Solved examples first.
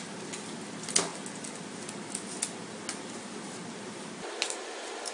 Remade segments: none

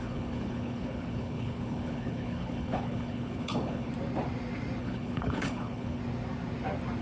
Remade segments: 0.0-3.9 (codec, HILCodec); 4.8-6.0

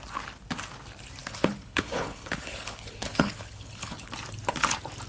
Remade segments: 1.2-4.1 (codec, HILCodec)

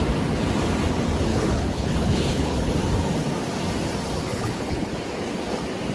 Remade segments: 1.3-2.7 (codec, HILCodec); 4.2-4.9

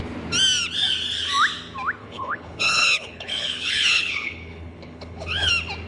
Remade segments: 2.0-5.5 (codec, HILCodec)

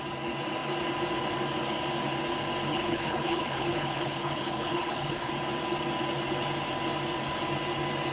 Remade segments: 2.7-5.3 (codec, HILCodec)

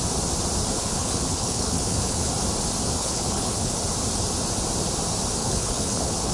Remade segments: 0.8-2.3 (codec, HILCodec); 3.0-3.7; 5.4-6.3

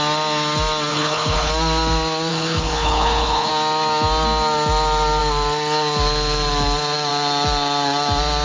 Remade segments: 0.9-1.5 (codec, HILCodec); 2.3-3.5